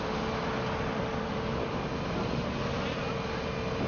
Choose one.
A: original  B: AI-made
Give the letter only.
A